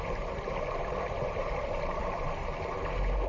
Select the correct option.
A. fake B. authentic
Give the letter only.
B